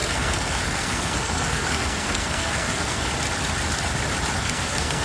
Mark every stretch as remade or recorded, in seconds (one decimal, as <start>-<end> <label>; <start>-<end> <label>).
0.0-3.1 remade; 3.1-4.4 recorded; 4.4-5.0 remade